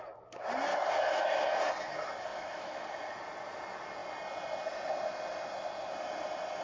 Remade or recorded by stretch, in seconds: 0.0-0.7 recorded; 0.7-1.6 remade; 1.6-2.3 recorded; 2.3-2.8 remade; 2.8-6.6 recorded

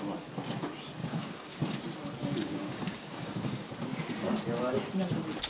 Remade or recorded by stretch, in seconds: 0.0-1.0 recorded; 1.0-1.6 remade; 1.6-2.2 recorded; 2.2-3.7 remade; 3.7-5.5 recorded